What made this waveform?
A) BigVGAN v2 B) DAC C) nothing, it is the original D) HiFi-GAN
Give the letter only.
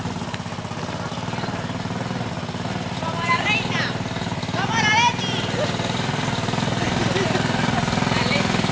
C